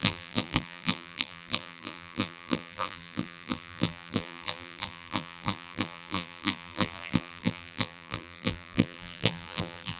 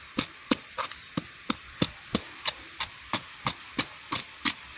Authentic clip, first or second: second